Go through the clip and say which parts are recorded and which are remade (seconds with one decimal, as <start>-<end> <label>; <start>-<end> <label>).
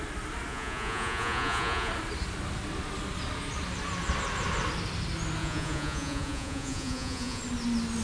0.0-0.5 recorded; 0.5-1.9 remade; 1.9-5.4 recorded; 5.4-7.4 remade; 7.4-8.0 recorded